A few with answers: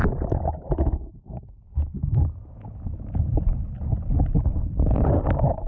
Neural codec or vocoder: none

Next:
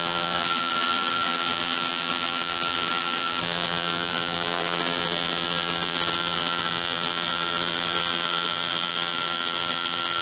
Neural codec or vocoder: vocoder, BigVGAN v2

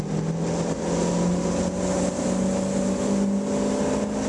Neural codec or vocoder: none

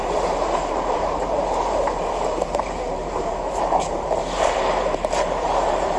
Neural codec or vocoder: vocoder, BigVGAN v2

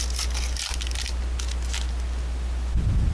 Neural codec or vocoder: none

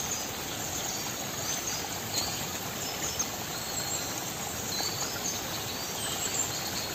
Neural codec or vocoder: none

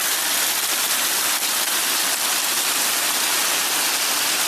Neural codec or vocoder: none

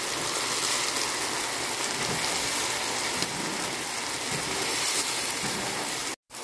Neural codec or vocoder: none